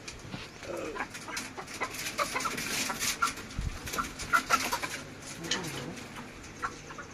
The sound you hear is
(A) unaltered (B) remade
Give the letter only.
A